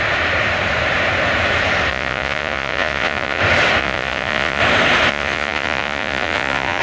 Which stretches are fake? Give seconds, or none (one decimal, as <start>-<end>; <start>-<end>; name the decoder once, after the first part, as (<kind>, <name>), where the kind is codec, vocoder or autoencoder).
1.9-3.4 (vocoder, Vocos); 3.8-4.6; 5.1-6.8